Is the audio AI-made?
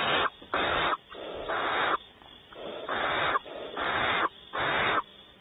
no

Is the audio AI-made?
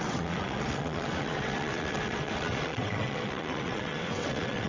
yes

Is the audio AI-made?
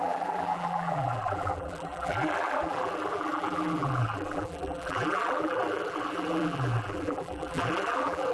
yes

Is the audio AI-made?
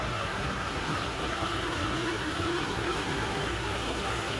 yes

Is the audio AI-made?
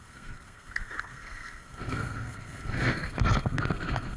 yes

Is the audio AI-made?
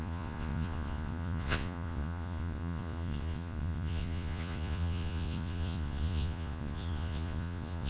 yes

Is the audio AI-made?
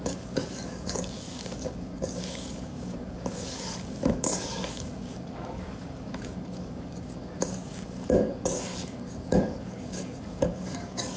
yes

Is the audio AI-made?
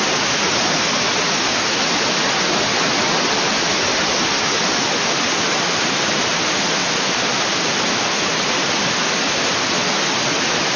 no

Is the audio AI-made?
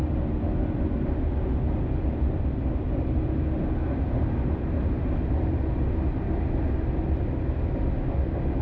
no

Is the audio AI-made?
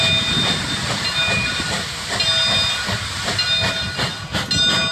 no